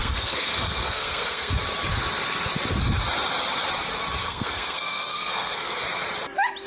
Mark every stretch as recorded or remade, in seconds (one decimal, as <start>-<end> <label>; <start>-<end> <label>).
0.0-1.5 remade; 1.5-4.2 recorded; 4.2-5.8 remade; 5.8-6.7 recorded